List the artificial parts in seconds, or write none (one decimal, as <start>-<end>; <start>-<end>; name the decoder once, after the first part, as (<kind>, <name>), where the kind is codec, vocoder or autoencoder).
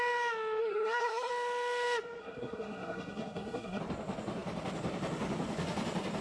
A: 0.6-1.3 (codec, SNAC); 2.2-3.8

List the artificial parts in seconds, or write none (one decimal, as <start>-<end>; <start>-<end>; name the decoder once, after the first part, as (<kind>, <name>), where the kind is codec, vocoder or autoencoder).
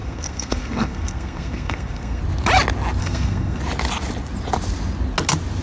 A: 0.0-2.2 (codec, SNAC); 3.0-3.6